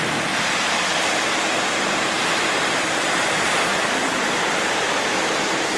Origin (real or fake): real